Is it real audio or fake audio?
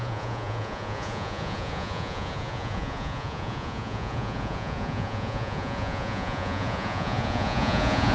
fake